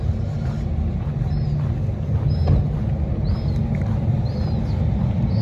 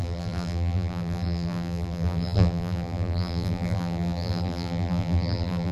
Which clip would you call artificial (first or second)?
second